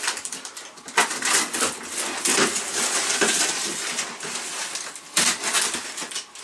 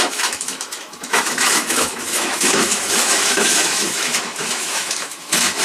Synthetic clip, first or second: second